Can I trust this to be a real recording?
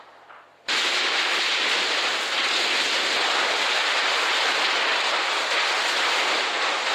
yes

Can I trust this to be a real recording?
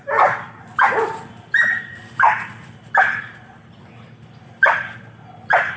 yes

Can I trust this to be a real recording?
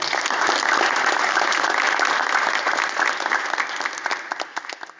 yes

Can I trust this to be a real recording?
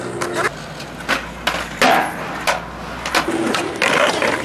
yes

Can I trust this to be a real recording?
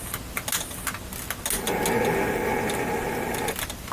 yes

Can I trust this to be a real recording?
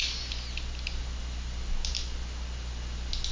yes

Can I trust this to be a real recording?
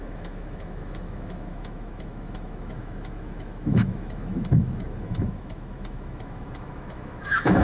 no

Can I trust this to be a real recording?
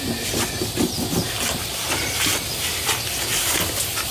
yes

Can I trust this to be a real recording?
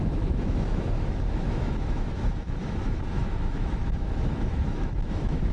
no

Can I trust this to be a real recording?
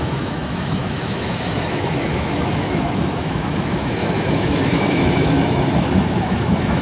no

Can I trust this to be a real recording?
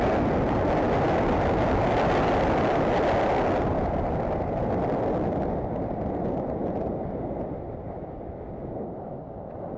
yes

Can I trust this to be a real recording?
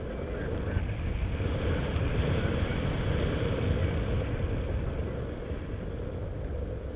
yes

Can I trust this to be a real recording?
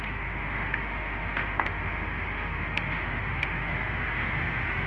no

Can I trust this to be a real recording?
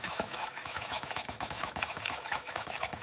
no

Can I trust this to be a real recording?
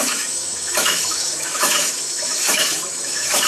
no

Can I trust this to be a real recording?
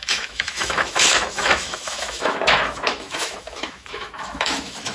no